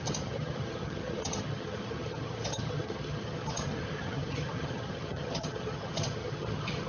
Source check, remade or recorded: remade